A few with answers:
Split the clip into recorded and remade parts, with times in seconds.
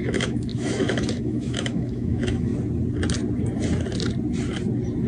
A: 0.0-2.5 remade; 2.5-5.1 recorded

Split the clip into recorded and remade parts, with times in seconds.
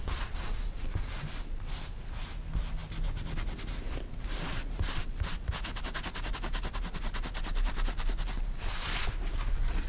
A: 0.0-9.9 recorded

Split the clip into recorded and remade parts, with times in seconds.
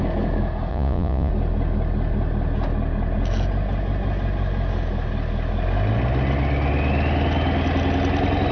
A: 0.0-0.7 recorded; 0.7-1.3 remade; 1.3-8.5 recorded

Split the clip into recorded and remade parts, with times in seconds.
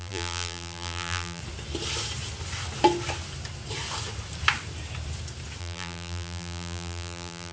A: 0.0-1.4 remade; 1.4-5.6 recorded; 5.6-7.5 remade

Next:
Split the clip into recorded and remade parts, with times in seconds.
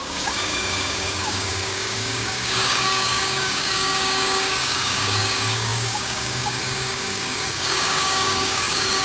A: 0.0-9.0 remade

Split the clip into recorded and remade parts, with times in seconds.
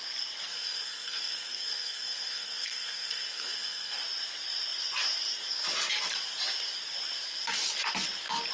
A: 0.0-0.5 recorded; 0.5-4.0 remade; 4.0-8.5 recorded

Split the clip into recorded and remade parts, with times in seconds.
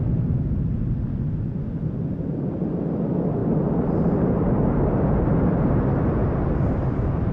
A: 0.0-3.4 recorded; 3.4-5.8 remade; 5.8-6.2 recorded; 6.2-7.3 remade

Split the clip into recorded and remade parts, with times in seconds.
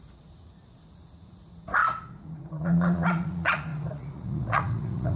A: 0.0-5.2 remade